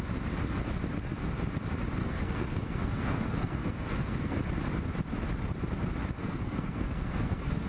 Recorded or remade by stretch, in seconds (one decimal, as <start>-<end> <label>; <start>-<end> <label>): 0.0-2.0 recorded; 2.0-4.4 remade; 4.4-6.2 recorded; 6.2-7.7 remade